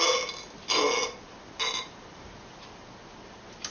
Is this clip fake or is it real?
real